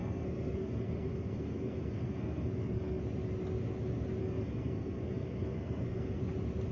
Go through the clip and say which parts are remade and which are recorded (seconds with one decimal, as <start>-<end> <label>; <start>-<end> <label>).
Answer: 0.0-3.0 remade; 3.0-4.2 recorded; 4.2-6.2 remade; 6.2-6.7 recorded